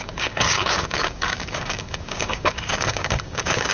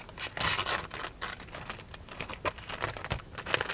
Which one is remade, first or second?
first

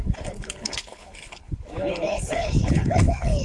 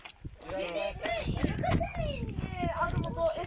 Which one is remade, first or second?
first